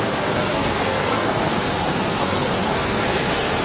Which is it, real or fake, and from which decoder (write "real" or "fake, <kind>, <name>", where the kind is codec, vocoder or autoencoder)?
fake, codec, SNAC